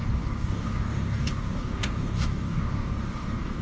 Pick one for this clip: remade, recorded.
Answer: remade